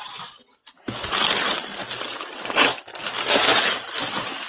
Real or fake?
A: real